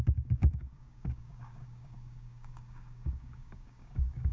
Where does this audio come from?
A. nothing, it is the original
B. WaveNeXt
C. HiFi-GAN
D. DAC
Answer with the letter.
D